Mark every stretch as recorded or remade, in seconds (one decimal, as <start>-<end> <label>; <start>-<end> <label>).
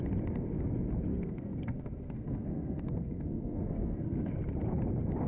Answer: 0.0-1.1 recorded; 1.1-4.3 remade; 4.3-5.3 recorded